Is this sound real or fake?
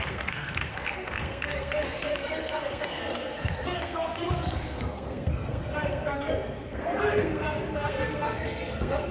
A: fake